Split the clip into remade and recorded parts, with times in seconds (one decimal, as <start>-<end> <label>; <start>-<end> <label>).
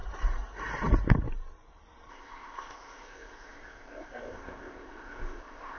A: 0.0-2.1 recorded; 2.1-5.8 remade